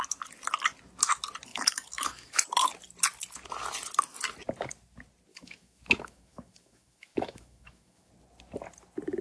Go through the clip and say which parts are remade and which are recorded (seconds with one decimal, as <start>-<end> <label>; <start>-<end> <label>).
0.0-1.5 recorded; 1.5-2.4 remade; 2.4-5.3 recorded; 5.3-8.1 remade; 8.1-9.2 recorded